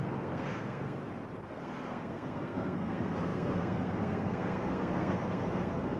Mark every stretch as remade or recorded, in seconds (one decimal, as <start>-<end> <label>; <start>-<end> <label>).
0.0-1.0 remade; 1.0-1.5 recorded; 1.5-6.0 remade